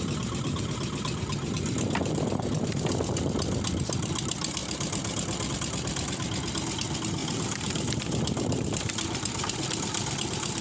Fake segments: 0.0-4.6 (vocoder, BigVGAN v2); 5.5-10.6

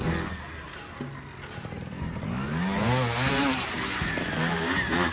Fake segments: 1.9-5.1 (vocoder, BigVGAN v2)

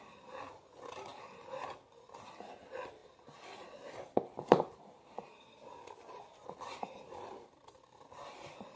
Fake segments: 1.1-1.7 (vocoder, BigVGAN v2)

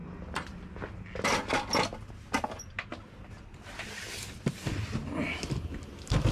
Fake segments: none